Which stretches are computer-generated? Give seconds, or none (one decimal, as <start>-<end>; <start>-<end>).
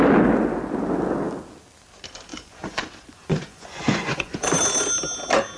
2.3-4.6